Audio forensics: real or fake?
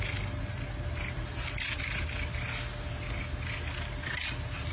real